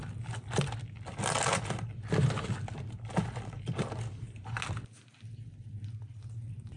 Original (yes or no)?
yes